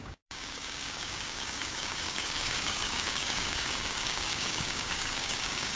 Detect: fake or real fake